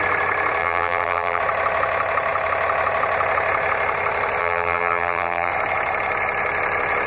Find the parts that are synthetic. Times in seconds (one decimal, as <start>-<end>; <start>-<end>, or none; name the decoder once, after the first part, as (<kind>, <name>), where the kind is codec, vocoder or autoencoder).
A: 0.6-1.4 (vocoder, BigVGAN v2); 4.4-5.5